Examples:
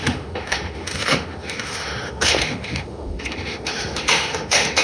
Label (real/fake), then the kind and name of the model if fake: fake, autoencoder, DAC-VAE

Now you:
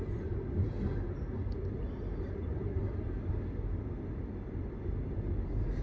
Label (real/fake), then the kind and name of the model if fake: real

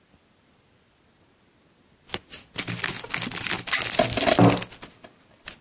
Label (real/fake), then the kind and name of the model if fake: real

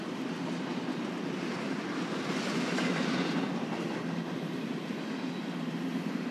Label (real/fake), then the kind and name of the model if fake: fake, vocoder, BigVGAN v2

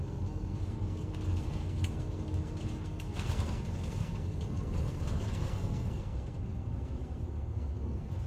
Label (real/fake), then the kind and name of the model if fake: fake, codec, SNAC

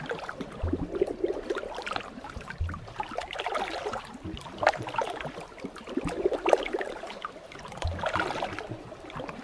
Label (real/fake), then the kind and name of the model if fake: real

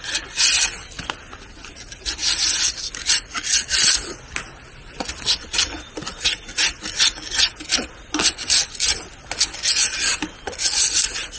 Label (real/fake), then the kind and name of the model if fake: real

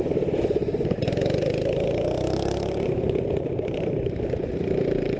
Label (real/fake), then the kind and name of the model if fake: fake, vocoder, BigVGAN v2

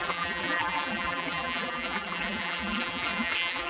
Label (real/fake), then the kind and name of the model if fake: fake, vocoder, BigVGAN v2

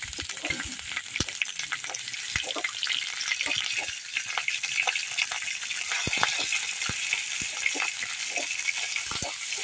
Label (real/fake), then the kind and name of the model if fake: real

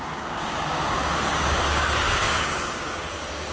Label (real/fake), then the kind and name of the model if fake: fake, codec, DAC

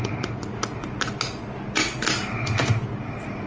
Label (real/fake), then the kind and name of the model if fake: real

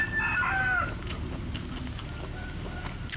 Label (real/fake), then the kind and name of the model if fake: real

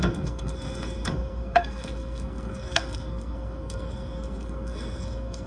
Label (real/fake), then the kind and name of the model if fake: fake, codec, SNAC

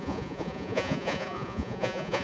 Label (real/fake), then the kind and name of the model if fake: fake, vocoder, Vocos